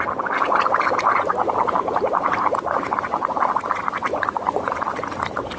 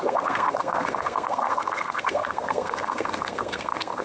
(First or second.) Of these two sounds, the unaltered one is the first